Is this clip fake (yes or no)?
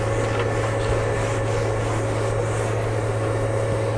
no